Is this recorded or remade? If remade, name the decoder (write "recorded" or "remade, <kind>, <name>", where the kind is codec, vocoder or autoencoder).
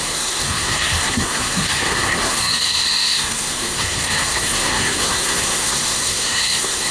remade, codec, SNAC